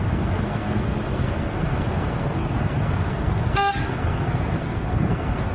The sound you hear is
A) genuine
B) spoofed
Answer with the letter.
B